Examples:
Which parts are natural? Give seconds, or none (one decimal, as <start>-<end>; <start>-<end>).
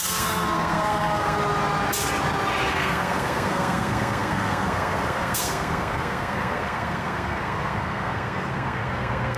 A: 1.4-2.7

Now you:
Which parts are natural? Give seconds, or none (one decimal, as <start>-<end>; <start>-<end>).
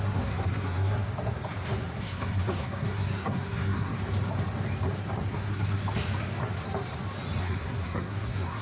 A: 1.1-2.0; 3.9-5.3; 5.8-7.4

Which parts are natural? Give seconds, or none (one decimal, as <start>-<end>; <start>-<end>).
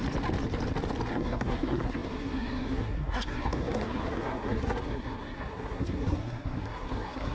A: 0.0-1.1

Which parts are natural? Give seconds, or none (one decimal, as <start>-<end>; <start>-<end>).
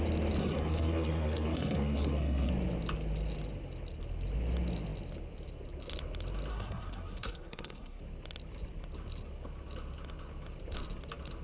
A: 0.0-0.4; 2.5-6.5; 8.0-11.4